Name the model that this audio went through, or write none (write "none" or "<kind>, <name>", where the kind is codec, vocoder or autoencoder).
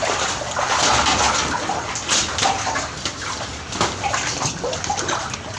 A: none